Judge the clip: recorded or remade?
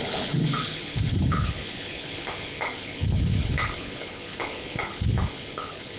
remade